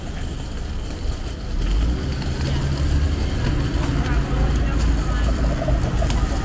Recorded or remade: recorded